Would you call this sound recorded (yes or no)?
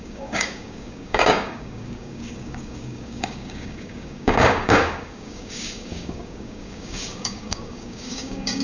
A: no